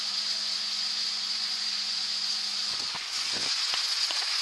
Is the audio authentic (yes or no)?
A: no